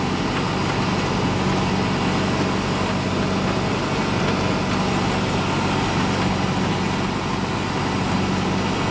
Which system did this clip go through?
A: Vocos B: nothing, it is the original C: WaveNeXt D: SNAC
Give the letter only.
B